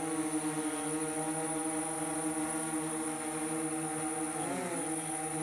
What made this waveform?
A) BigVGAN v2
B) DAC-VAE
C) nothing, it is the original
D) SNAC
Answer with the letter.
C